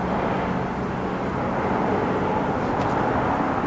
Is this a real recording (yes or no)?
yes